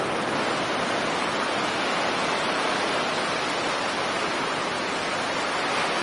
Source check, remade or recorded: recorded